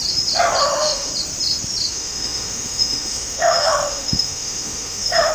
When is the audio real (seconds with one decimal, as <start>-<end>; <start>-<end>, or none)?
0.0-0.6; 1.1-1.9